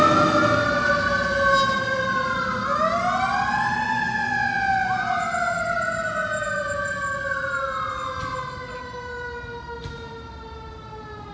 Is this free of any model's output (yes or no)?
yes